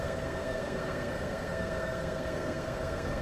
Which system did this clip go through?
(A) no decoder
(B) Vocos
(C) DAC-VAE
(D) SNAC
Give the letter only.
D